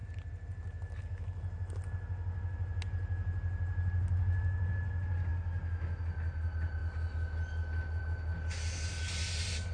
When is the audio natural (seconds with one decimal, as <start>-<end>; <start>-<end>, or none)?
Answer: 0.0-9.7